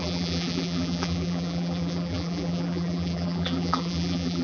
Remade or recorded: remade